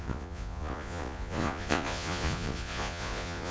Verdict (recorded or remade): remade